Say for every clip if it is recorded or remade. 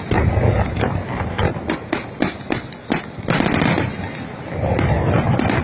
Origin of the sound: recorded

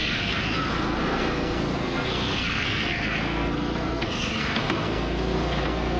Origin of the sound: remade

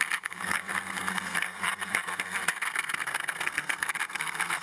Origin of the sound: remade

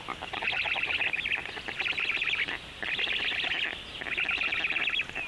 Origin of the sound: recorded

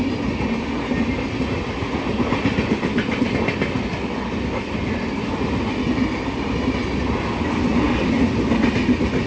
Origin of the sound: recorded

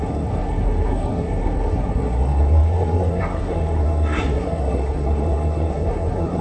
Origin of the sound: remade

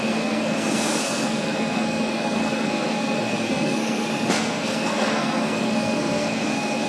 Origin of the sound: remade